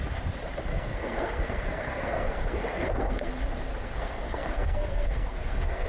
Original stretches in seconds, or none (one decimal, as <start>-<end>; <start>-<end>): 0.0-0.7; 3.3-3.7